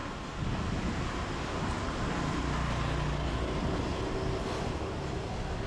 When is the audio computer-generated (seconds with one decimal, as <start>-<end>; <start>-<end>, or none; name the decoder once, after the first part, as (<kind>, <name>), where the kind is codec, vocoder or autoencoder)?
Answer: none

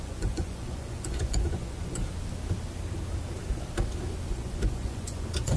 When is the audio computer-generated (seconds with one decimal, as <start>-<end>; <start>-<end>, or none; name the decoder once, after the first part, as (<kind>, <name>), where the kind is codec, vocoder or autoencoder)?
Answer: 0.0-2.0 (vocoder, Vocos); 4.3-5.6